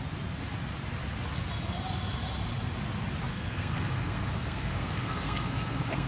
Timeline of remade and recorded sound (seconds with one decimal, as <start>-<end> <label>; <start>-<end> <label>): 0.0-3.3 recorded; 3.3-6.1 remade